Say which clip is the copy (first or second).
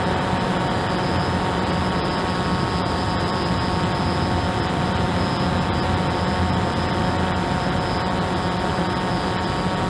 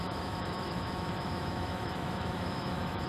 second